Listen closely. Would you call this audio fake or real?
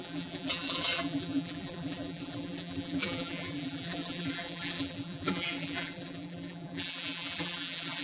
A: fake